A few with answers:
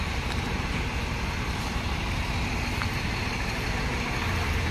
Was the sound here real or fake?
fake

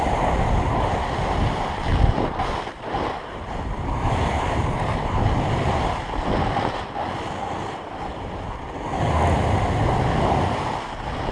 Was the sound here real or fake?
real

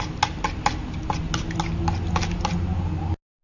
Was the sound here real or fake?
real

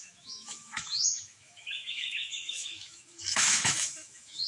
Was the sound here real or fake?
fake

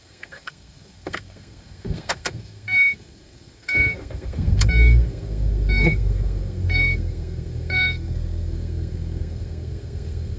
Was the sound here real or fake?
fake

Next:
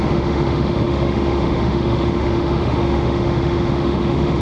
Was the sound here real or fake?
fake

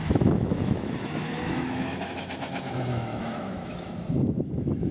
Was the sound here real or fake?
fake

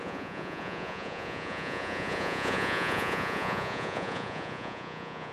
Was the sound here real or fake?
fake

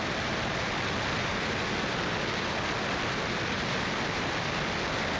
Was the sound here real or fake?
real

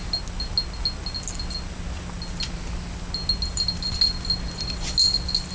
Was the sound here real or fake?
real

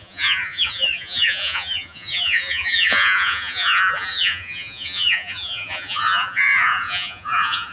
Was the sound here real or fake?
fake